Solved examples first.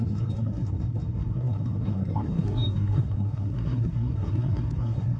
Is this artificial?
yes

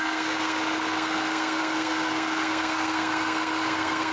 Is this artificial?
yes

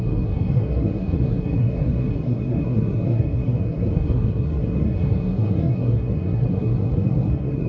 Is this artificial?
yes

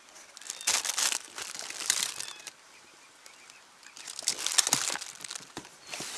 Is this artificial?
no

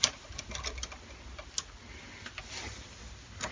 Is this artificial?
no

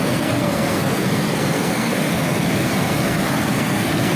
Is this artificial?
yes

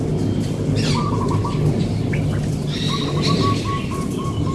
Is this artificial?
no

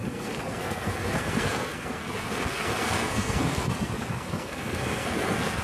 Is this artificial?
yes